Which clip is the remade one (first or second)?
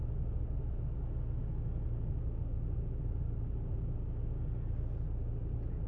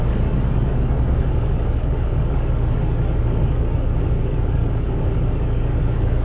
second